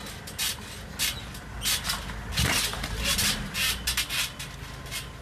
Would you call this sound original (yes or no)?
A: yes